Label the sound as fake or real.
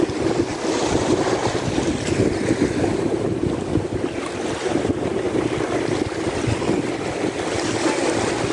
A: real